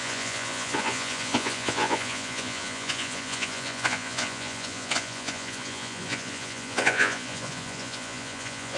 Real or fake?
fake